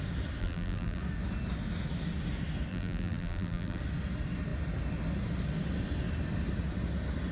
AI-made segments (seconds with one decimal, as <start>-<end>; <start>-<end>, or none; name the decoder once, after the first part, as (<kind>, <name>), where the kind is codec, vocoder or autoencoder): 0.4-1.0 (vocoder, BigVGAN v2); 2.7-3.8